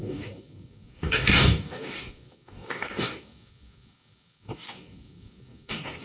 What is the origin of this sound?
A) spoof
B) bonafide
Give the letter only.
A